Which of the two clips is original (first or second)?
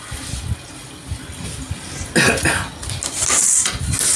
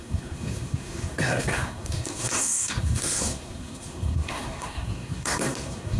first